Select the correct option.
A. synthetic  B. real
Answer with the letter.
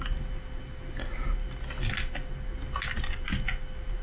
B